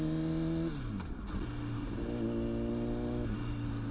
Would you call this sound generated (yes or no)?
no